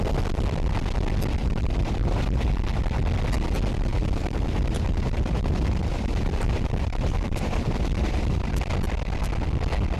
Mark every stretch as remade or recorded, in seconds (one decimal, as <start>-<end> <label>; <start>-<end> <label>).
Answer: 0.0-1.4 recorded; 1.4-2.8 remade; 2.8-3.9 recorded; 3.9-8.6 remade; 8.6-10.0 recorded